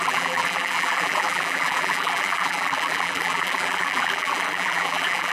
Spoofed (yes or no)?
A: yes